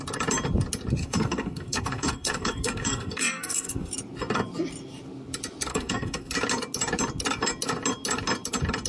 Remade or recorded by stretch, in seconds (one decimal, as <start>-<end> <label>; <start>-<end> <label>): 0.0-1.0 recorded; 1.0-3.9 remade; 3.9-5.7 recorded; 5.7-6.3 remade; 6.3-8.9 recorded